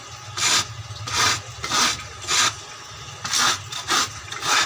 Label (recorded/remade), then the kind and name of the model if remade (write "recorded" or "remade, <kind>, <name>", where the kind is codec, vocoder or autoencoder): recorded